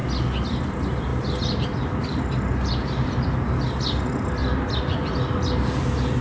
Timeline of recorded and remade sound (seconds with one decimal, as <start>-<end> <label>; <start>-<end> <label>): 0.0-1.1 recorded; 1.1-2.2 remade; 2.2-2.8 recorded; 2.8-3.5 remade; 3.5-4.4 recorded; 4.4-5.0 remade; 5.0-6.2 recorded